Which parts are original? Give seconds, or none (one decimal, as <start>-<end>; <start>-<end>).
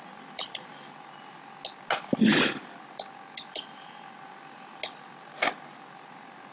0.0-6.5